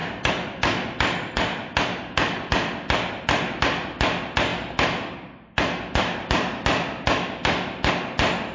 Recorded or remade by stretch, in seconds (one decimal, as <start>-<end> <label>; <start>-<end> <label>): 0.0-3.6 remade; 3.6-4.5 recorded; 4.5-7.9 remade; 7.9-8.5 recorded